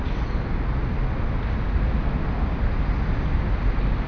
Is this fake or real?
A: real